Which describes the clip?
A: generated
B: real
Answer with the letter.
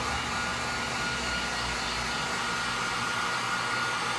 B